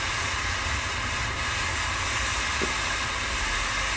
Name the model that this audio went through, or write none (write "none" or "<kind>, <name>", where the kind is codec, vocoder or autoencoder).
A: none